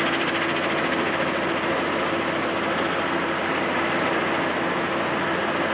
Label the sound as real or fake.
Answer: real